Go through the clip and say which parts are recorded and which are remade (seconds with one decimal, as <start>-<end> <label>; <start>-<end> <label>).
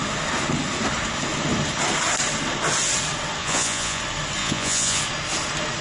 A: 0.0-3.4 recorded; 3.4-4.0 remade; 4.0-4.4 recorded; 4.4-5.0 remade; 5.0-5.8 recorded